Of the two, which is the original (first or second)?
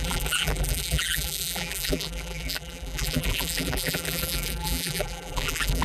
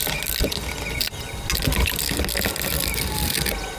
second